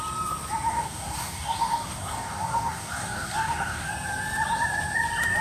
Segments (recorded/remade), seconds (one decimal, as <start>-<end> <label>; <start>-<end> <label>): 0.0-0.7 recorded; 0.7-3.9 remade; 3.9-5.4 recorded